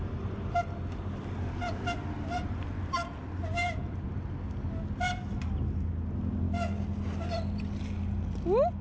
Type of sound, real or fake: real